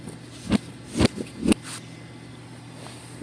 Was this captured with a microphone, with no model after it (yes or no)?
yes